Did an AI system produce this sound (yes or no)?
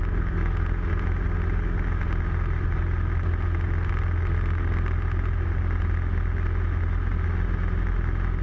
no